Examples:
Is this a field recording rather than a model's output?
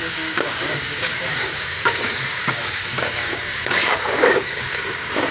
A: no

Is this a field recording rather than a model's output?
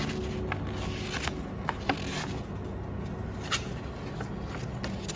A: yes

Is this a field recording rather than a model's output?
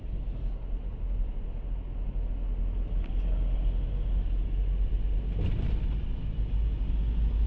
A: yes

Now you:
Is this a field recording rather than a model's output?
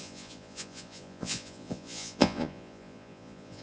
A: no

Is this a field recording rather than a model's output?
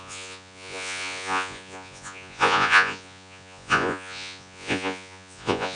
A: no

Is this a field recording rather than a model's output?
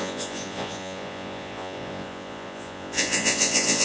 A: no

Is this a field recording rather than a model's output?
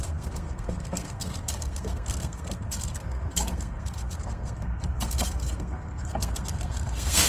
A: no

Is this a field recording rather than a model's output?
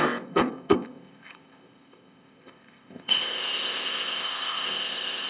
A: no